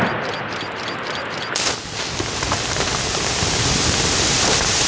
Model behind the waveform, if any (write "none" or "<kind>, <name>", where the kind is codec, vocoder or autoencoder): none